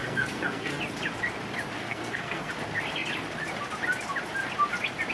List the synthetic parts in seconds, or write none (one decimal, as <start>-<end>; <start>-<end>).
0.0-0.8; 1.8-2.5